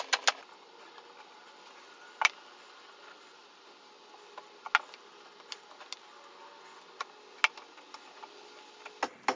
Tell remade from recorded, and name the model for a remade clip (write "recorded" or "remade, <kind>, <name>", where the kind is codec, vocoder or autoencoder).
recorded